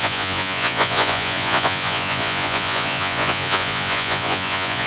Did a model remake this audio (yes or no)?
yes